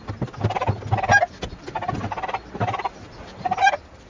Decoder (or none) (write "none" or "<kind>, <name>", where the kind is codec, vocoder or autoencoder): none